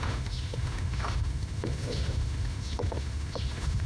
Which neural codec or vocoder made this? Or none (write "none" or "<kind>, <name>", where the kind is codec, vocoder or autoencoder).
autoencoder, DAC-VAE